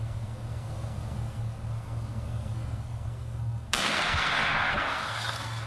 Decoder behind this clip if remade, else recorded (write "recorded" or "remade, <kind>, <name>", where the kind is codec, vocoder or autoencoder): remade, codec, SNAC